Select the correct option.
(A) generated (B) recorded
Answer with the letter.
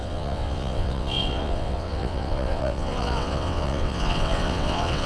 A